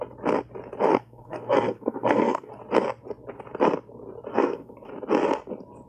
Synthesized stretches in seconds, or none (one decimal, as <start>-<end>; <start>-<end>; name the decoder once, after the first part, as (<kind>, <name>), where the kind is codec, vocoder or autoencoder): 0.9-2.5 (codec, SNAC); 4.3-4.9